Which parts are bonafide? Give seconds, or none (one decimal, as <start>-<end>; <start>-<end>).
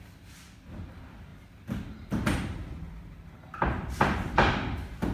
none